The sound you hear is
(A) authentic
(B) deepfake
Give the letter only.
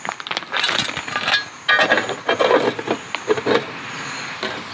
A